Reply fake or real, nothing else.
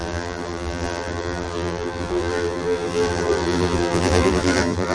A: fake